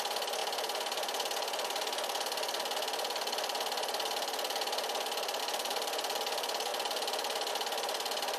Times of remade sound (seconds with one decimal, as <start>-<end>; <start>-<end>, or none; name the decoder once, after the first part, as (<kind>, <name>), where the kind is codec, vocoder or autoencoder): none